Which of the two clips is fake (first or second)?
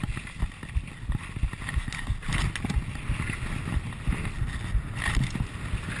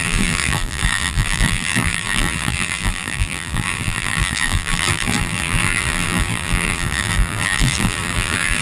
second